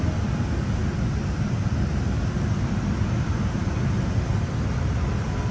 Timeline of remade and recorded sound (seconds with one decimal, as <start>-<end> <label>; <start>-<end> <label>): 0.0-5.5 recorded